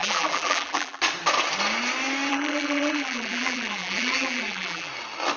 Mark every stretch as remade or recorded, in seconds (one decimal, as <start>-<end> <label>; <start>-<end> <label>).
0.0-1.0 remade; 1.0-2.3 recorded; 2.3-4.9 remade; 4.9-5.4 recorded